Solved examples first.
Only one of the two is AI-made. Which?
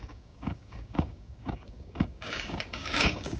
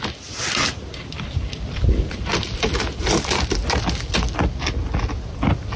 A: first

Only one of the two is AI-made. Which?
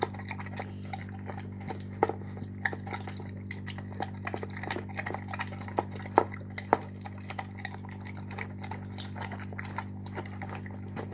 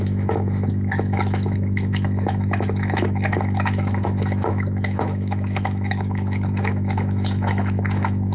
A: second